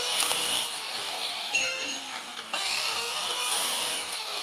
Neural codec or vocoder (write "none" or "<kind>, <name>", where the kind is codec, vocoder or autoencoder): codec, DAC